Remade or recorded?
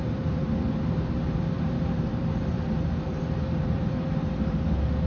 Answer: remade